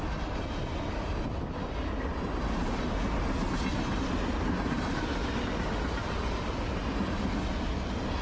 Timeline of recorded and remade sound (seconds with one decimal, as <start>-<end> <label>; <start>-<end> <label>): 0.0-8.2 recorded